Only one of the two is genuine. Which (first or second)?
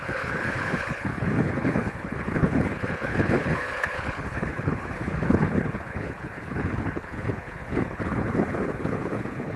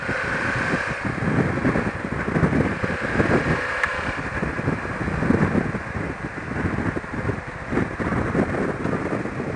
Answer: second